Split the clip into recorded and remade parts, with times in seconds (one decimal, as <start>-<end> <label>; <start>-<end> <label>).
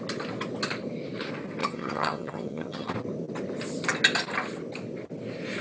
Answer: 0.0-1.6 recorded; 1.6-2.9 remade; 2.9-5.6 recorded